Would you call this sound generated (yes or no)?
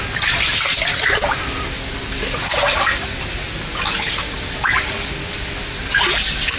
no